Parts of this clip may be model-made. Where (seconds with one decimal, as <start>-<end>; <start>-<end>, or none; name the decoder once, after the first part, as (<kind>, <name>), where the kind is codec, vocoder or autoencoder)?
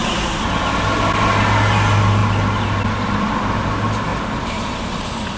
4.1-4.7 (vocoder, BigVGAN v2)